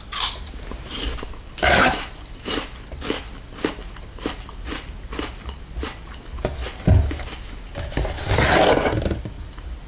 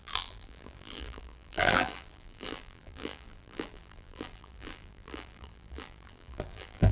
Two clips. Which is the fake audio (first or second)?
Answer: second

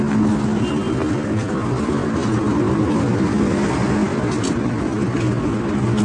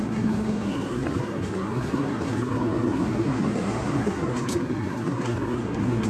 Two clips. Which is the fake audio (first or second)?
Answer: second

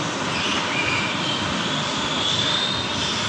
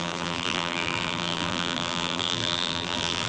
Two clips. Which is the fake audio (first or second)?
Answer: second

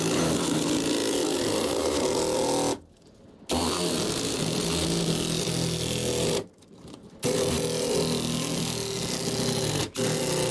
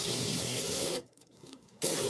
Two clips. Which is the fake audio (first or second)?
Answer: second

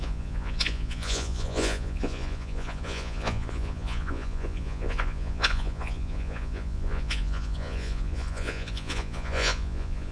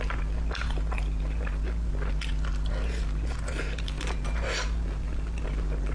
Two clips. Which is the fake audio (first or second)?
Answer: first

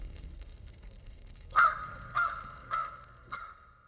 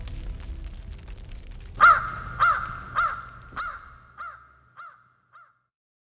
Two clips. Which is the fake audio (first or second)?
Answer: first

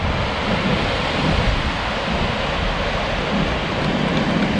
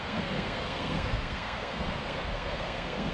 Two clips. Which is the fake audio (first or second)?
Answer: second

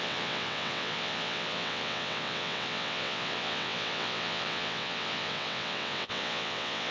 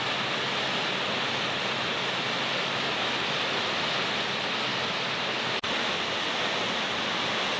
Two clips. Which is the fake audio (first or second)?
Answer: first